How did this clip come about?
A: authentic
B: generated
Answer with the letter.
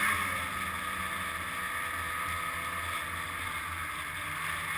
A